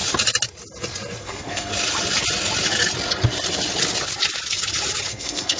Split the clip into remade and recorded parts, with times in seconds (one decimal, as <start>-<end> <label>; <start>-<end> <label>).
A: 0.0-1.2 recorded; 1.2-1.7 remade; 1.7-5.1 recorded; 5.1-5.6 remade